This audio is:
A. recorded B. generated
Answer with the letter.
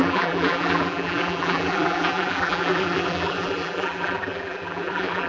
B